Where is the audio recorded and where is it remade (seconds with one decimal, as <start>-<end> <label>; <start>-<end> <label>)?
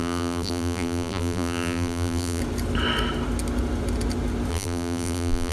0.0-2.4 remade; 2.4-4.5 recorded; 4.5-5.5 remade